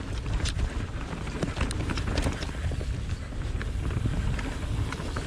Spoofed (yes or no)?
no